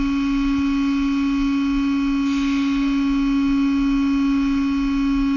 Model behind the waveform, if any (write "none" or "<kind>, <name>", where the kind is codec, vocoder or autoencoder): none